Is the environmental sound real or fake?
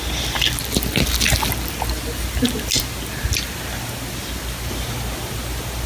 real